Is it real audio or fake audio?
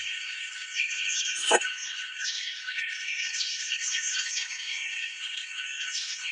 fake